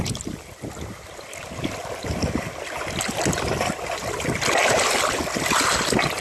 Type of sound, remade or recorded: recorded